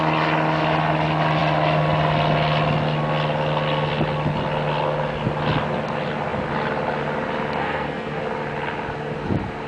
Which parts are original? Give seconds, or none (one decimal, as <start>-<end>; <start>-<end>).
0.0-7.6; 8.2-9.7

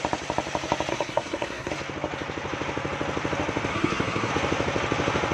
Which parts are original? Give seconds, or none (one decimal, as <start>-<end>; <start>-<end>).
0.0-0.9; 1.7-3.7; 4.3-5.3

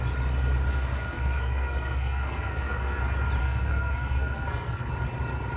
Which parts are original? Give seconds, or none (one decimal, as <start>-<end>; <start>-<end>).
0.0-0.7; 3.0-3.4; 4.9-5.6

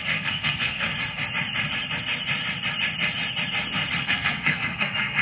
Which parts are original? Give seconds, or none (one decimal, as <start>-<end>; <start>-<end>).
0.9-4.0

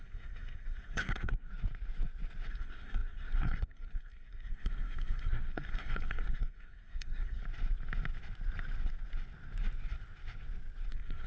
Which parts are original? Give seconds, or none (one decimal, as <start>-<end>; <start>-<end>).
1.5-2.5; 7.4-10.9

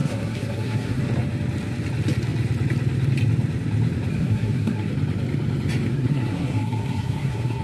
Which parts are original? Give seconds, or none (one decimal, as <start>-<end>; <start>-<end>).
1.0-4.1; 4.9-5.9

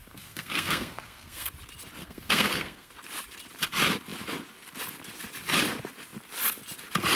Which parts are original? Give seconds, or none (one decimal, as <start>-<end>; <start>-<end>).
1.5-2.0; 2.9-7.2